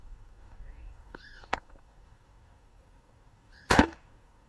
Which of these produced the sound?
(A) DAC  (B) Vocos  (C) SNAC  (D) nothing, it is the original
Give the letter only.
A